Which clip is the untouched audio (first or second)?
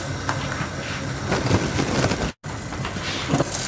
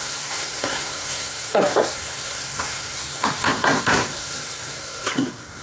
first